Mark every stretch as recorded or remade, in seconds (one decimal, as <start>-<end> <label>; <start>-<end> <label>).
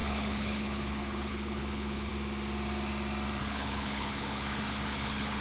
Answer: 0.0-2.1 remade; 2.1-3.4 recorded; 3.4-5.4 remade